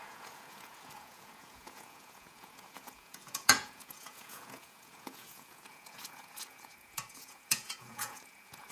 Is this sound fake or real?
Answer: fake